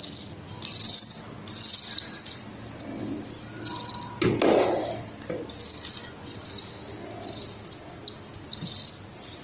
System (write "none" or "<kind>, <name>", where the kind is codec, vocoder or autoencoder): none